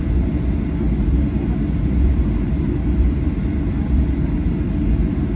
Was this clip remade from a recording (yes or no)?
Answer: no